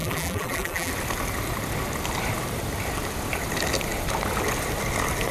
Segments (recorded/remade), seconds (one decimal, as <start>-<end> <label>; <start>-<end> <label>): 0.0-0.9 remade; 0.9-5.3 recorded

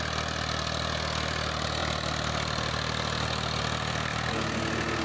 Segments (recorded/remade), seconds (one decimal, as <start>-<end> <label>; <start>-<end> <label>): 0.0-5.0 recorded

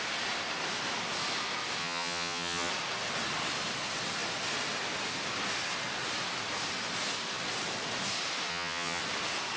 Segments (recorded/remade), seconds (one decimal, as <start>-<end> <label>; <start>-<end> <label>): 0.0-1.8 recorded; 1.8-2.7 remade; 2.7-8.5 recorded; 8.5-9.0 remade; 9.0-9.6 recorded